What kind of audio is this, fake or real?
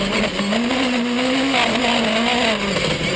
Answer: real